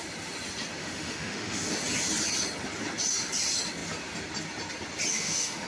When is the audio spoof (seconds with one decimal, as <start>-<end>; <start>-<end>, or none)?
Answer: 0.8-1.7; 5.1-5.7